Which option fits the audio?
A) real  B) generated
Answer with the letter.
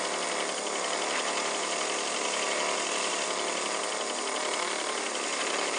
A